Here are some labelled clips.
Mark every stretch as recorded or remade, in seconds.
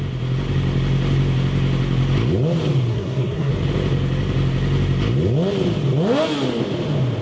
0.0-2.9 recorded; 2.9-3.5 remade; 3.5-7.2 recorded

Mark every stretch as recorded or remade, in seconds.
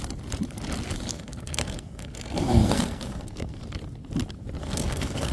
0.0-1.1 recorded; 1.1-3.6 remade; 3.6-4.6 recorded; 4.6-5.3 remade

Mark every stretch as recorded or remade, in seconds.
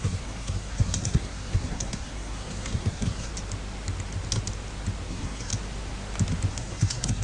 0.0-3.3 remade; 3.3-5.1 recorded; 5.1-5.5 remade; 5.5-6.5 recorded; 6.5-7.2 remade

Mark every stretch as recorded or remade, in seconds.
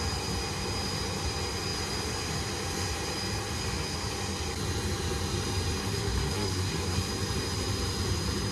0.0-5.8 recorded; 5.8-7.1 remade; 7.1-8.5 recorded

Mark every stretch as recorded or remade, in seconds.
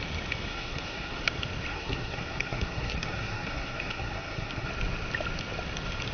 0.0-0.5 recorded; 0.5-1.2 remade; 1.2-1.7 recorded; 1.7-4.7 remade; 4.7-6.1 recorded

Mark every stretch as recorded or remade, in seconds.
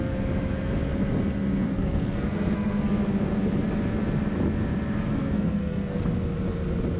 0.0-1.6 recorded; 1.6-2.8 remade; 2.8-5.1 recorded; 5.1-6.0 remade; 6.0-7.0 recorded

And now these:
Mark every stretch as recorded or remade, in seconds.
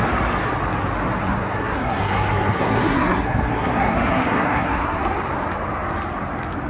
0.0-1.2 recorded; 1.2-5.0 remade; 5.0-6.7 recorded